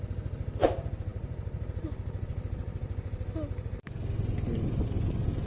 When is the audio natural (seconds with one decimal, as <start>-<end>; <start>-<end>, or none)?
0.0-5.5